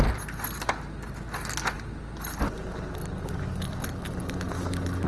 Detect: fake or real real